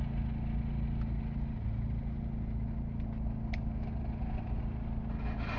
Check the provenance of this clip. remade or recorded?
recorded